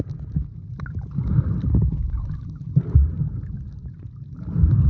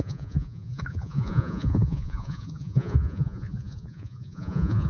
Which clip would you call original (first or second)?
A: first